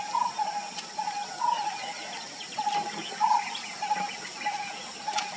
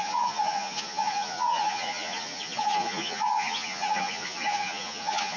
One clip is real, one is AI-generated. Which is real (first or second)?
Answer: first